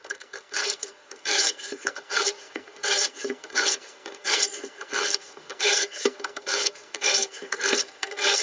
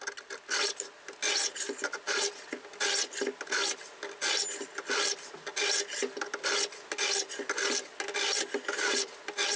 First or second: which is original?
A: second